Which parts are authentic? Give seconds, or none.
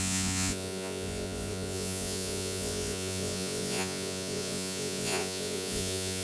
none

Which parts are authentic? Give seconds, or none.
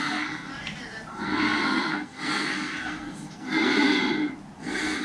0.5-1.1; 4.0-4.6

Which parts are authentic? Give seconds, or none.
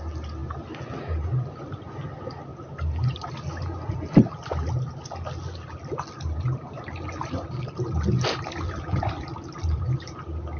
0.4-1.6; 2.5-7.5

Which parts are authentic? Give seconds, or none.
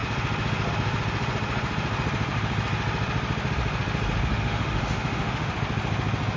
0.0-4.3; 5.5-6.4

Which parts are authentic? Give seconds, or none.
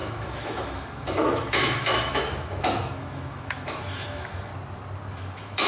4.5-5.1